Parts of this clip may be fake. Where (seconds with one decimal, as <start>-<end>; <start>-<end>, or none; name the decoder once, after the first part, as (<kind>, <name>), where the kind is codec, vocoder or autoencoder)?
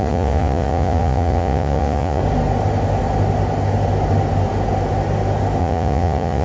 0.0-2.2 (vocoder, Vocos); 5.6-6.4